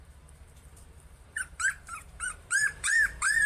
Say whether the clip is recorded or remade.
remade